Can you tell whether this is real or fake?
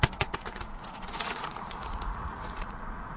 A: fake